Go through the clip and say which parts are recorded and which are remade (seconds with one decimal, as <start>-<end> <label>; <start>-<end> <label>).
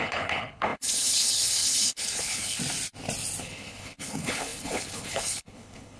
0.0-2.6 remade; 2.6-3.4 recorded; 3.4-6.0 remade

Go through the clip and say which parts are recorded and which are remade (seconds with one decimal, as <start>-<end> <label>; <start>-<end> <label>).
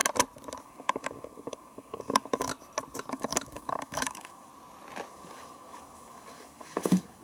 0.0-0.6 recorded; 0.6-2.5 remade; 2.5-3.1 recorded; 3.1-4.5 remade; 4.5-5.1 recorded; 5.1-7.2 remade